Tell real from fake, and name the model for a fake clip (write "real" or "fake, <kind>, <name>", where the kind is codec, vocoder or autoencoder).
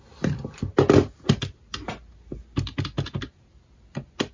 real